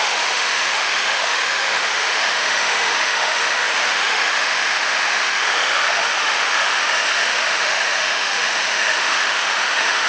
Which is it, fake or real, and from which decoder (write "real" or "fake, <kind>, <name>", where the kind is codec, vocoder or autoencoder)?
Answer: fake, autoencoder, DAC-VAE